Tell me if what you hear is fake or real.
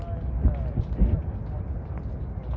real